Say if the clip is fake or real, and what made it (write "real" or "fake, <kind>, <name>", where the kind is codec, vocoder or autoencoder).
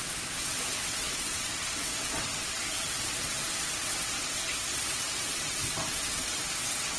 fake, vocoder, WaveNeXt